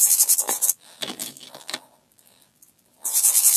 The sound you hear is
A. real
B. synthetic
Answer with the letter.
B